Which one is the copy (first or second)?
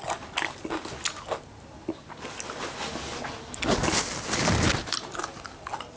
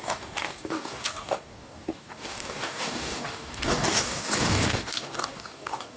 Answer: second